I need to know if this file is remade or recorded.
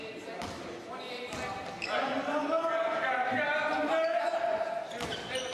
recorded